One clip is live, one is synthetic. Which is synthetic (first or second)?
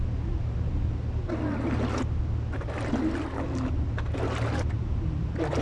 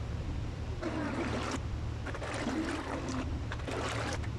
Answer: second